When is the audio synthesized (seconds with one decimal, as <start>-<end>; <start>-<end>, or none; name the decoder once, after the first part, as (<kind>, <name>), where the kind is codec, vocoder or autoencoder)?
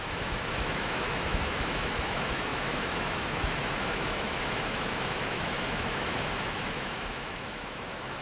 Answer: 0.0-8.2 (autoencoder, DAC-VAE)